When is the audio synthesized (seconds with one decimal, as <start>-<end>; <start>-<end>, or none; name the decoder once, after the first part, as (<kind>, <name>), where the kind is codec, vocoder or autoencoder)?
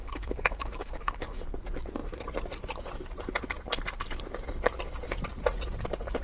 0.0-1.4 (codec, DAC)